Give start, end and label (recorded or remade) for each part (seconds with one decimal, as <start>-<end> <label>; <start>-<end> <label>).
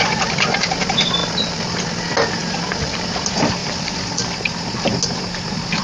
0.0-1.2 recorded; 1.2-1.8 remade; 1.8-3.6 recorded; 3.6-4.1 remade; 4.1-5.8 recorded